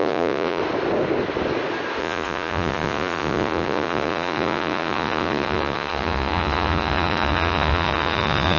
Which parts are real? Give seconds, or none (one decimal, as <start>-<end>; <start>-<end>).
0.6-2.0